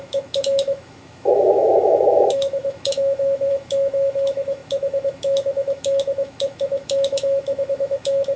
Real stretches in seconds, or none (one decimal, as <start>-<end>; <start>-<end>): none